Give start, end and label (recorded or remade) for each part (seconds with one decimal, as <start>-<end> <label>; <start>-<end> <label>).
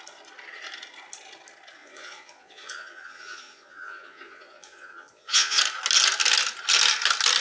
0.0-1.8 recorded; 1.8-5.6 remade; 5.6-7.4 recorded